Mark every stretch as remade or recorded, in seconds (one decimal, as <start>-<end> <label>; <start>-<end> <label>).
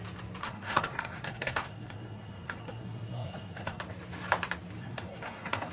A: 0.0-0.4 recorded; 0.4-3.8 remade; 3.8-4.8 recorded; 4.8-5.7 remade